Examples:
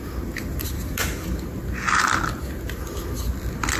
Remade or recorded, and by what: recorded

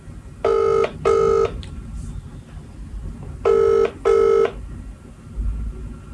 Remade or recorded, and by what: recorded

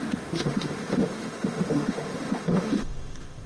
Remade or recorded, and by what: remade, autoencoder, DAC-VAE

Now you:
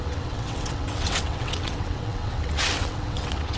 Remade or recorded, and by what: remade, vocoder, WaveNeXt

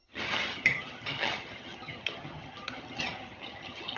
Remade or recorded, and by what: remade, vocoder, HiFi-GAN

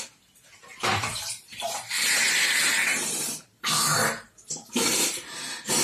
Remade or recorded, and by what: remade, vocoder, BigVGAN v2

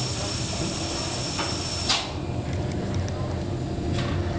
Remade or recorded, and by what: recorded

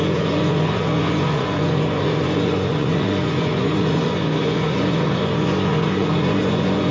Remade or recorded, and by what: remade, vocoder, Vocos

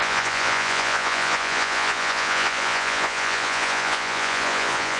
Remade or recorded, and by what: remade, vocoder, Vocos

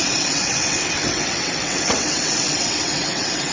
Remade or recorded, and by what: remade, vocoder, WaveNeXt